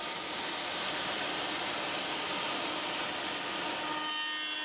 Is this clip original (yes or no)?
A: yes